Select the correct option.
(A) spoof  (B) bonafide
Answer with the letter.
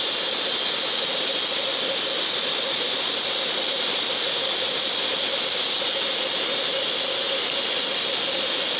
B